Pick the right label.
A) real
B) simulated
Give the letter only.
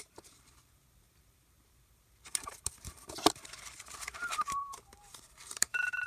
B